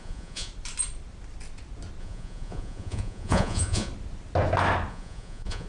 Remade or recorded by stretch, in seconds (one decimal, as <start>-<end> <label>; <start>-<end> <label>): 0.0-0.5 remade; 0.5-2.0 recorded; 2.0-3.9 remade; 3.9-4.9 recorded; 4.9-5.7 remade

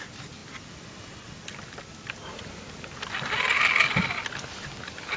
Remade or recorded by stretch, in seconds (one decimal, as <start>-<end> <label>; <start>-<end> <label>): 0.0-5.2 recorded

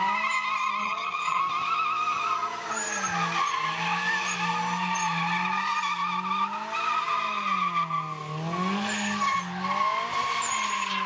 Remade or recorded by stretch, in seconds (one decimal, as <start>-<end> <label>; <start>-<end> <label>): 0.0-0.8 recorded; 0.8-1.4 remade; 1.4-11.1 recorded

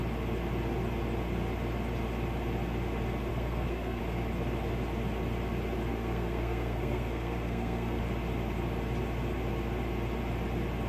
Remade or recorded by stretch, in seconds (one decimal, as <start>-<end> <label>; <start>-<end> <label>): 0.0-3.3 recorded; 3.3-4.0 remade; 4.0-5.9 recorded; 5.9-8.0 remade; 8.0-10.9 recorded

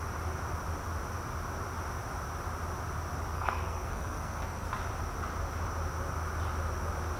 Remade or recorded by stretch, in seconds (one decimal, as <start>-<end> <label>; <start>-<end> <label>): 0.0-3.3 recorded; 3.3-4.7 remade; 4.7-7.2 recorded

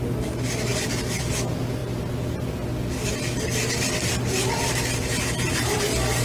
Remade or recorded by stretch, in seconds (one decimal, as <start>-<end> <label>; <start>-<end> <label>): 0.0-0.7 recorded; 0.7-1.3 remade; 1.3-5.0 recorded; 5.0-5.8 remade; 5.8-6.2 recorded

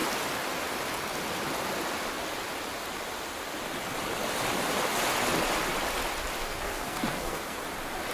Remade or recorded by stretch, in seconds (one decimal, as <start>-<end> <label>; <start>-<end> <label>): 0.0-6.4 recorded; 6.4-7.6 remade; 7.6-8.1 recorded

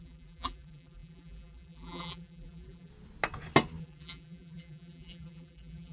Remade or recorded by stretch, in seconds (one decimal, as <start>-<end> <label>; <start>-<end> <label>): 0.0-2.9 remade; 2.9-3.8 recorded; 3.8-5.9 remade